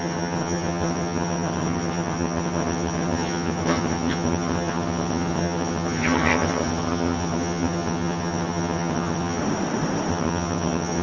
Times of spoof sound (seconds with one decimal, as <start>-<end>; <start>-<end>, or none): 0.0-9.4; 10.1-11.0